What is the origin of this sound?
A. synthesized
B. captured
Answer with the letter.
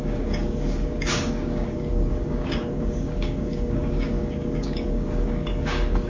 A